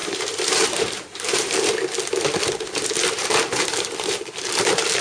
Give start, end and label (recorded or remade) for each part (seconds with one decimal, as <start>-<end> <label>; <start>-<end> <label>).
0.0-1.7 remade; 1.7-3.0 recorded; 3.0-4.2 remade; 4.2-5.0 recorded